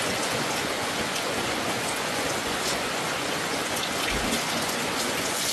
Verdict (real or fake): fake